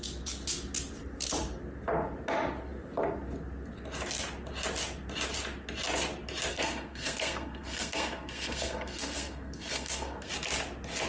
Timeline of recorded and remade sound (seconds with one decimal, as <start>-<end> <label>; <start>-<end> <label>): 0.0-6.5 recorded; 6.5-10.3 remade; 10.3-11.1 recorded